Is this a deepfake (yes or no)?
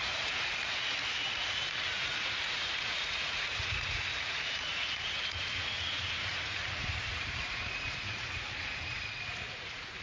yes